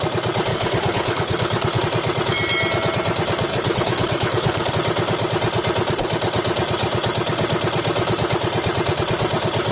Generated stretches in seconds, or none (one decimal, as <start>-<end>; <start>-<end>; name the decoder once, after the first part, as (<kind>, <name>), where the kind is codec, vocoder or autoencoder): 0.5-1.8 (codec, HILCodec); 3.5-4.7